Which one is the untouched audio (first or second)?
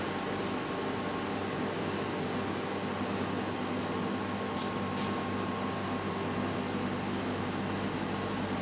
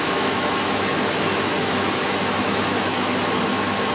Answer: first